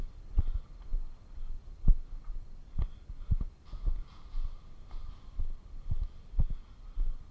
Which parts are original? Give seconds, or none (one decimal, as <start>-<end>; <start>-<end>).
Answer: 0.0-7.3